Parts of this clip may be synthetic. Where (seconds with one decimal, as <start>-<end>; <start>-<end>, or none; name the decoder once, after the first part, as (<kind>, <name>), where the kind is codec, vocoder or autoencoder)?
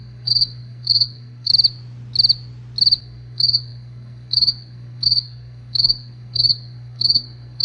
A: 0.0-1.5 (codec, SNAC); 3.0-7.6